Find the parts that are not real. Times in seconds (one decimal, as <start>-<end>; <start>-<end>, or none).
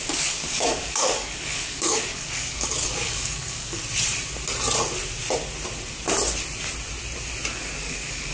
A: 0.0-3.8; 7.5-8.3